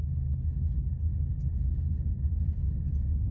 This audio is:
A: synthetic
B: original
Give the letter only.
B